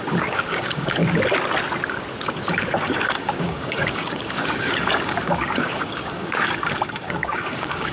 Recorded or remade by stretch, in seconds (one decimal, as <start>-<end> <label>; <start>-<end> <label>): 0.0-1.0 remade; 1.0-2.8 recorded; 2.8-7.9 remade